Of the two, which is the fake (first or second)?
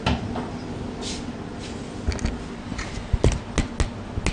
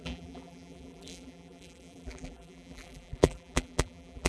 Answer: second